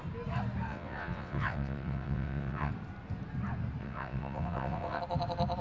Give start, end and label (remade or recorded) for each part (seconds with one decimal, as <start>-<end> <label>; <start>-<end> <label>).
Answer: 0.0-0.7 recorded; 0.7-2.7 remade; 2.7-3.8 recorded; 3.8-5.0 remade; 5.0-5.6 recorded